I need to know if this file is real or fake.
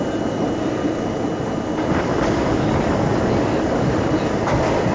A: real